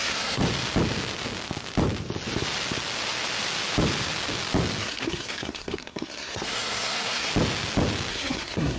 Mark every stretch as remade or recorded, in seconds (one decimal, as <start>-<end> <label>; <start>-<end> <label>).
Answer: 0.0-0.4 remade; 0.4-4.8 recorded; 4.8-7.3 remade; 7.3-8.1 recorded; 8.1-8.8 remade